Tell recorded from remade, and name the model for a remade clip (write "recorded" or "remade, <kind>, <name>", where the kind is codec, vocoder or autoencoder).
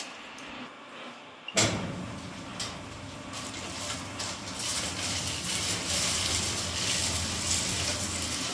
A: recorded